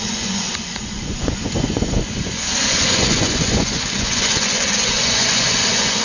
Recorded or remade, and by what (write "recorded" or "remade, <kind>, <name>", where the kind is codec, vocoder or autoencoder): remade, vocoder, Vocos